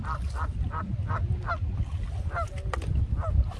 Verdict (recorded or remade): recorded